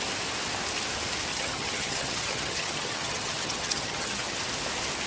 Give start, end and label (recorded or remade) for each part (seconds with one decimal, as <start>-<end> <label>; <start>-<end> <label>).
0.0-1.3 recorded; 1.3-4.4 remade; 4.4-5.1 recorded